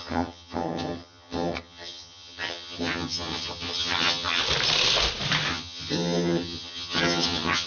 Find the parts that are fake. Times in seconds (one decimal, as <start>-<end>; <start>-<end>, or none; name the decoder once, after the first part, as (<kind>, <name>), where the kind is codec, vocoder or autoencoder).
0.0-4.4 (vocoder, HiFi-GAN); 5.5-7.7